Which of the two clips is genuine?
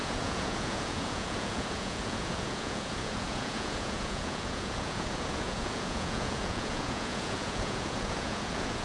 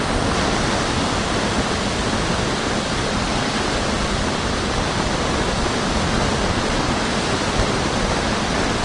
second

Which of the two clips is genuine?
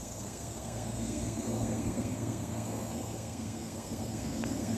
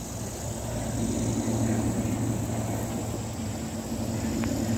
second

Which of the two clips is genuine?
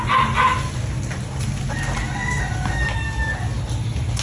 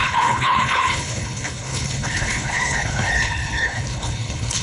first